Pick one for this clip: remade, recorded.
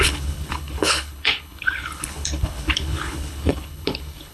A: remade